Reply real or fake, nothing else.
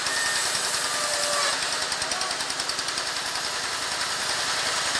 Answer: real